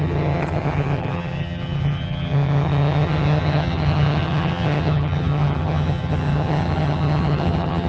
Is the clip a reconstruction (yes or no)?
yes